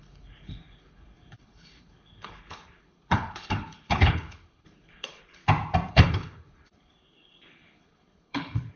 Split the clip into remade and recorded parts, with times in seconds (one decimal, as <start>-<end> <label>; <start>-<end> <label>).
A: 0.0-5.4 remade; 5.4-5.9 recorded; 5.9-8.8 remade